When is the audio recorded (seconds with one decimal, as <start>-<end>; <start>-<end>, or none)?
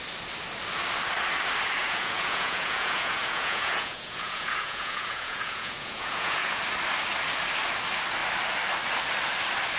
0.0-1.8; 6.6-9.8